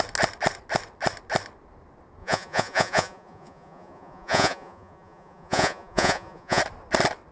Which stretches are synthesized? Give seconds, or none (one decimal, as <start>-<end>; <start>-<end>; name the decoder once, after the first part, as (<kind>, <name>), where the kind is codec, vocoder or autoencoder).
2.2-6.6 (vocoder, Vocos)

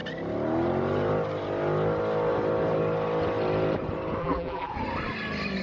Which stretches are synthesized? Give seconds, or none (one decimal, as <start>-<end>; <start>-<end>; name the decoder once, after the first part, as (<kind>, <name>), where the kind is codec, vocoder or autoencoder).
4.2-4.7 (vocoder, BigVGAN v2)

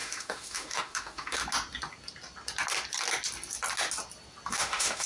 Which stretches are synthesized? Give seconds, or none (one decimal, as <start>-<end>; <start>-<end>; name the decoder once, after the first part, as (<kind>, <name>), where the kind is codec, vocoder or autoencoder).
0.0-1.4 (autoencoder, DAC-VAE); 4.5-5.1

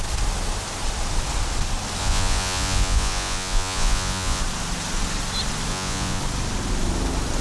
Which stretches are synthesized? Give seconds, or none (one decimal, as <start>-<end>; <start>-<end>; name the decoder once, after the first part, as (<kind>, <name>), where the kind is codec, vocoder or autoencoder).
2.0-4.4 (vocoder, Vocos); 5.7-6.2

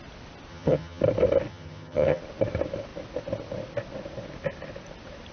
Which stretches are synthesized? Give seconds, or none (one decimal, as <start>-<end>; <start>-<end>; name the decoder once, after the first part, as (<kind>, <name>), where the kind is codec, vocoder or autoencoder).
0.5-1.0 (vocoder, HiFi-GAN); 1.5-2.2

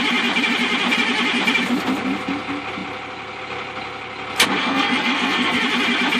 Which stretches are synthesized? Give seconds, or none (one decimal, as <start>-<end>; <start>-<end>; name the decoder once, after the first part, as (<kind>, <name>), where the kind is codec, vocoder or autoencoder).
4.6-5.6 (codec, SNAC)

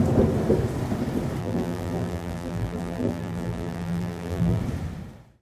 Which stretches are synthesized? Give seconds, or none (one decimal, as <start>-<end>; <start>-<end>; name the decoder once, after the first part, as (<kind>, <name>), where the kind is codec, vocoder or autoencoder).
1.4-4.6 (vocoder, BigVGAN v2)